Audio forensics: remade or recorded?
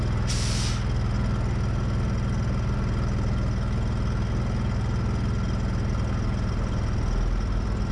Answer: recorded